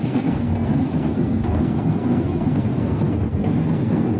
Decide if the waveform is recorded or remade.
remade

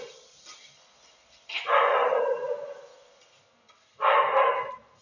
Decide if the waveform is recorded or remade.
recorded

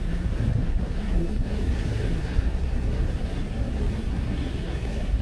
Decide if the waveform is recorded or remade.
remade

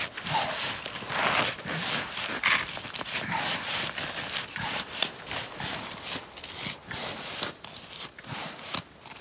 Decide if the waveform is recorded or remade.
recorded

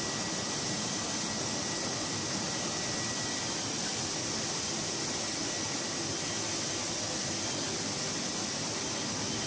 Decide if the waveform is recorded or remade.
recorded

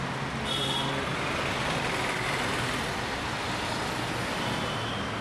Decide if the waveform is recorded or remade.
recorded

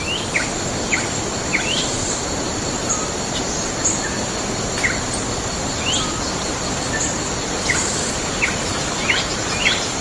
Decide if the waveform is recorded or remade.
recorded